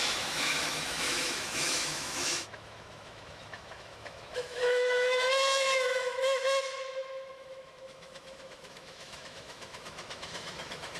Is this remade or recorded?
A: remade